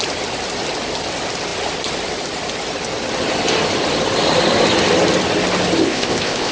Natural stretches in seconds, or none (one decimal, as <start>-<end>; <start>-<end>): 0.0-5.8